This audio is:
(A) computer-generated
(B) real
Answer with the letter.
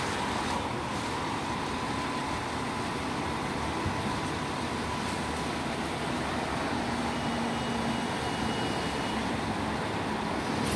B